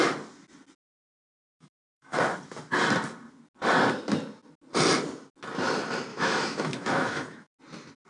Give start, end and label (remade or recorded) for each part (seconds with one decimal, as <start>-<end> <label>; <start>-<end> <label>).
0.0-1.1 recorded; 1.1-2.2 remade; 2.2-6.1 recorded; 6.1-7.6 remade; 7.6-8.1 recorded